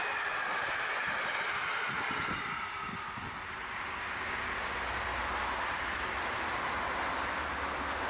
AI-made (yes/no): no